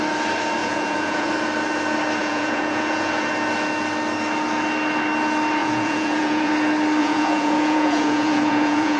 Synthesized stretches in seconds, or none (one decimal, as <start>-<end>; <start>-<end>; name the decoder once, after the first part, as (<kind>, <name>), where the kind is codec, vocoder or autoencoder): 0.6-1.3 (vocoder, Vocos); 2.2-3.2; 5.6-6.5; 7.0-9.0